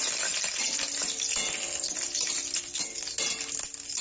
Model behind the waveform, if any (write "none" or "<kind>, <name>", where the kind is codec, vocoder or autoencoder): none